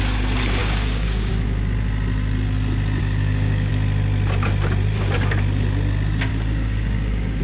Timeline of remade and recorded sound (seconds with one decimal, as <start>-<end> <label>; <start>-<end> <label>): 0.0-0.6 recorded; 0.6-1.3 remade; 1.3-3.0 recorded; 3.0-3.7 remade; 3.7-6.3 recorded; 6.3-7.4 remade